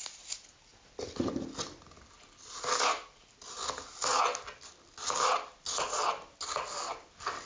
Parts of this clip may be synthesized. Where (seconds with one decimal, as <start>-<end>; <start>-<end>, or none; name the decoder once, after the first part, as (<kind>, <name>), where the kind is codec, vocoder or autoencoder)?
none